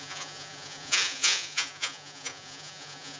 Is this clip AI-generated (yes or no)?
yes